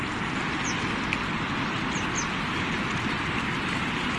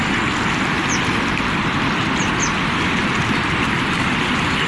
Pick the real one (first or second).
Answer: first